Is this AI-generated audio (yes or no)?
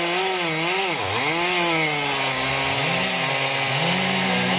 no